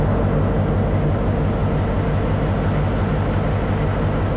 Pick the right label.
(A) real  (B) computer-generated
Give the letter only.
A